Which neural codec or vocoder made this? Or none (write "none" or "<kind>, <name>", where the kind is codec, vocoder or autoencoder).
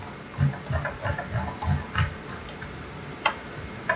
none